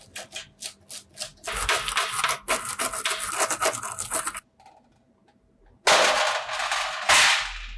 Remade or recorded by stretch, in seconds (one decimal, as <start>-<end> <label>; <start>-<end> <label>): 0.0-7.8 recorded